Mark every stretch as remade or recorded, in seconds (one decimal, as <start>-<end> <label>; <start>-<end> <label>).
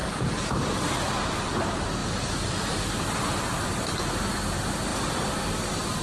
0.0-1.5 remade; 1.5-2.0 recorded; 2.0-2.9 remade; 2.9-4.9 recorded; 4.9-5.5 remade; 5.5-6.0 recorded